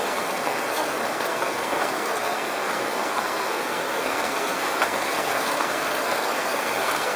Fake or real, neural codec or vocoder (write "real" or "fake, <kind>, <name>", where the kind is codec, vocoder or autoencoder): fake, codec, SNAC